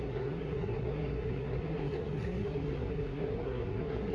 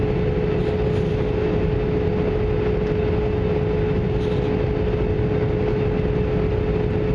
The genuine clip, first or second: second